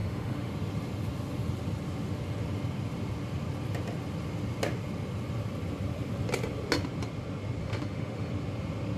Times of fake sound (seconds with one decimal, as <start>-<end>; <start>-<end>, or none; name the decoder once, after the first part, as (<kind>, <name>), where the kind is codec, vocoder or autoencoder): 0.0-0.5 (autoencoder, DAC-VAE); 7.6-8.3